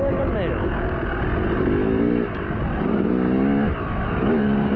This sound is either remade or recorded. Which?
recorded